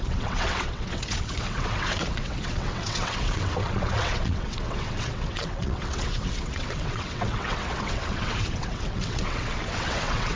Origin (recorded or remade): remade